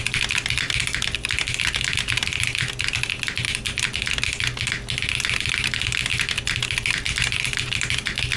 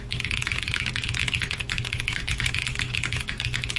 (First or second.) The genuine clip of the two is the first